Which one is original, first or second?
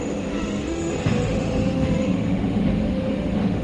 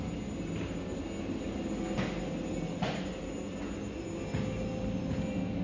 second